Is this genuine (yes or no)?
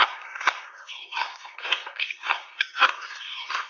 no